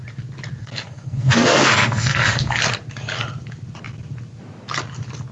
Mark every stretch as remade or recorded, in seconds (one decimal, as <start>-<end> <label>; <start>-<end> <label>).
0.0-0.6 recorded; 0.6-2.6 remade; 2.6-5.3 recorded